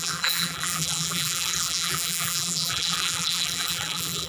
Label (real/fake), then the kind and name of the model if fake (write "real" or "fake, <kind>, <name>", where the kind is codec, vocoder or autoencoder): fake, vocoder, BigVGAN v2